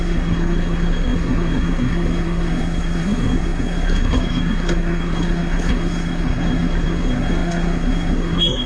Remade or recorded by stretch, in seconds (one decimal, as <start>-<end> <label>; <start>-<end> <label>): 0.0-8.7 remade